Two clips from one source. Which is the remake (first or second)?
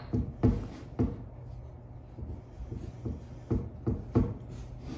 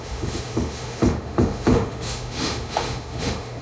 second